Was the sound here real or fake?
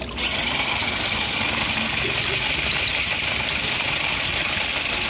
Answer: real